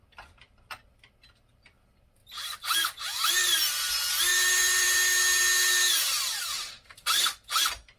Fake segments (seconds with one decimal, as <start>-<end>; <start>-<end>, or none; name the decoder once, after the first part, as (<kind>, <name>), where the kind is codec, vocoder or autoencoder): 2.2-3.9 (vocoder, BigVGAN v2); 4.3-5.0; 6.5-7.1